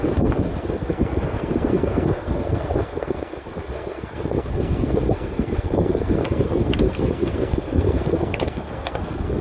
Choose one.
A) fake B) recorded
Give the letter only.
A